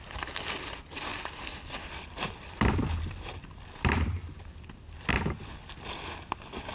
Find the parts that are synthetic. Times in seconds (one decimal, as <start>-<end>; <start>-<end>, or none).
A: 1.1-5.1